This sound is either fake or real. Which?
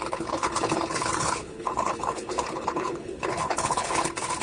fake